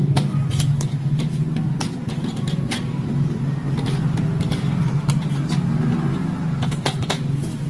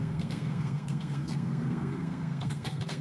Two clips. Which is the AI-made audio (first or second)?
second